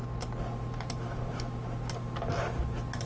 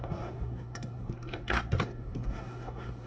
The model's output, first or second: second